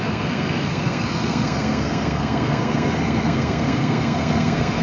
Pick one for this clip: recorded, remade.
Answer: remade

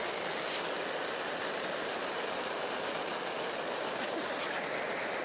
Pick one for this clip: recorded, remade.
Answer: recorded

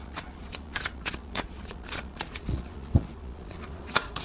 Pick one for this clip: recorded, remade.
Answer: remade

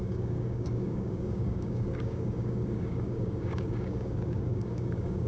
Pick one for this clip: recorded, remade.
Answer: remade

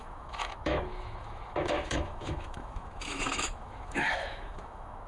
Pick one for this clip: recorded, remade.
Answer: remade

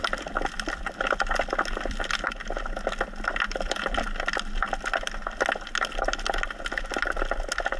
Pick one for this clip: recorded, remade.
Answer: recorded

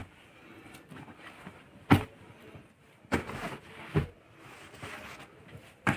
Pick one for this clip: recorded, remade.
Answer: recorded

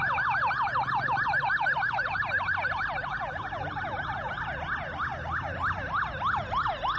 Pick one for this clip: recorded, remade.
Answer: recorded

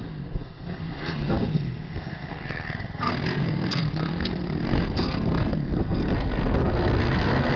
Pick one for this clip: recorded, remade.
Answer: remade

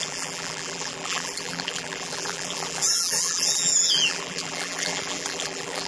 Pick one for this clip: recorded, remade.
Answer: remade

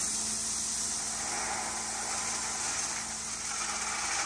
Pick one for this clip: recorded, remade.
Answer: recorded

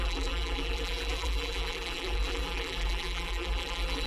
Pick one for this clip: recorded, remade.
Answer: remade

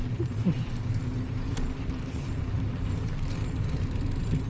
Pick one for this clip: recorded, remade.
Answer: remade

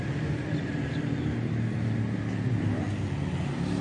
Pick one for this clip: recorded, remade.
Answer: recorded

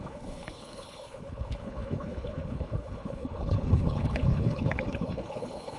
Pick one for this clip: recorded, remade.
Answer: remade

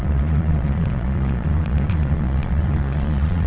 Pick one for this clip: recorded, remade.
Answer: remade